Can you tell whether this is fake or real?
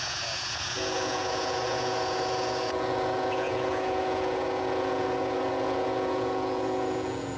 fake